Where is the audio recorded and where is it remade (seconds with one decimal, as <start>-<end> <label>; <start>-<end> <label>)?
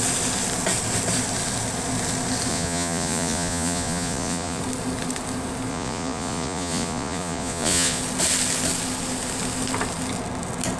0.0-2.5 recorded; 2.5-4.6 remade; 4.6-5.7 recorded; 5.7-8.0 remade; 8.0-10.8 recorded